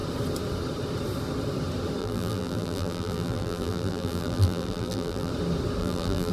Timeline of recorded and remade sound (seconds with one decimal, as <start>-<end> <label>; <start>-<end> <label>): 0.0-2.0 recorded; 2.0-5.3 remade; 5.3-5.8 recorded; 5.8-6.3 remade